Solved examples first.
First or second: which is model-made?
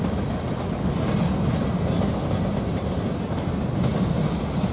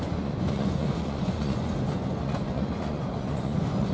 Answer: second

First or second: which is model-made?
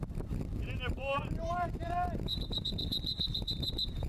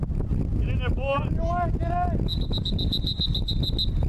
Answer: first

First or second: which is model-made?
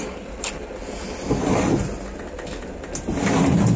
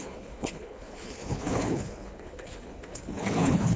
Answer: second